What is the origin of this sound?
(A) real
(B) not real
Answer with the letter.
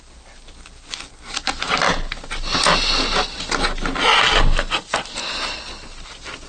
A